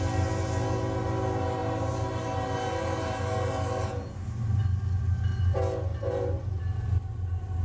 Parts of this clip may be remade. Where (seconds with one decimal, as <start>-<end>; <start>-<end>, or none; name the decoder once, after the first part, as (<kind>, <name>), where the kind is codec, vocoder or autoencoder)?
1.6-4.6 (vocoder, BigVGAN v2); 5.9-6.6